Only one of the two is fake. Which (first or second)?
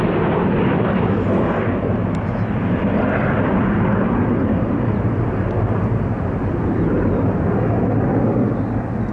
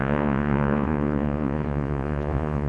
second